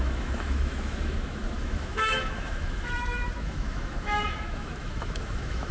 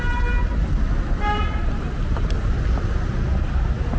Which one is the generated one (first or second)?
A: first